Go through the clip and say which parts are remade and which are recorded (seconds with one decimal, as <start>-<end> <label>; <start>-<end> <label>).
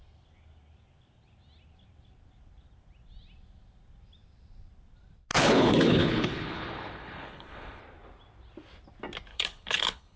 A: 0.0-5.3 recorded; 5.3-7.8 remade; 7.8-9.3 recorded; 9.3-10.2 remade